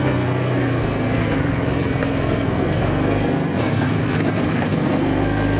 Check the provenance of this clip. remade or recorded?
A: remade